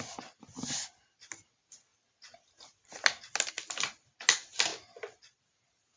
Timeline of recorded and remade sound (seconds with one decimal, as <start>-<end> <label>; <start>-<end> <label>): 0.0-6.0 recorded